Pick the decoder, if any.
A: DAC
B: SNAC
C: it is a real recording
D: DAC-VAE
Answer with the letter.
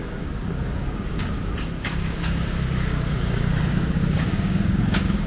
A